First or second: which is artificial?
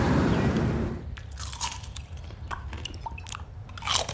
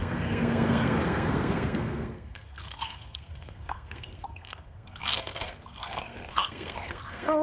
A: second